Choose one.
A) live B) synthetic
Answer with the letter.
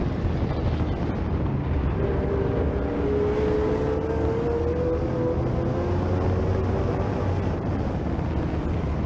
A